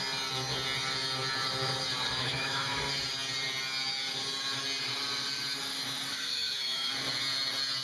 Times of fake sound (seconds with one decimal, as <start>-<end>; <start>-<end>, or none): 2.2-2.8; 6.1-6.9